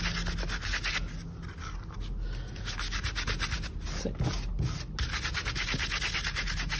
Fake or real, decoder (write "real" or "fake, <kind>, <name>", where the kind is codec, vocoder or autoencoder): real